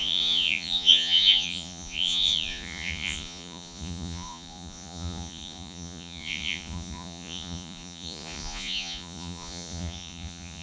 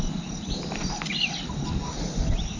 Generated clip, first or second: first